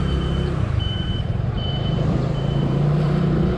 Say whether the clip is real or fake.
fake